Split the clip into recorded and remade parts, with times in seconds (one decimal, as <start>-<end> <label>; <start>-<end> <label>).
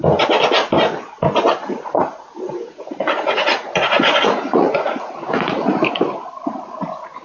0.0-1.6 recorded; 1.6-5.9 remade; 5.9-7.2 recorded